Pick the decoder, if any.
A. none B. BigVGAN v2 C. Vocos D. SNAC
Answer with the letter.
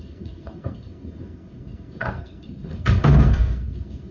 D